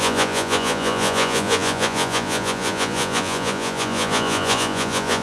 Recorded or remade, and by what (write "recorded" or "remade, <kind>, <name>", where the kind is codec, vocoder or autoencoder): remade, vocoder, Vocos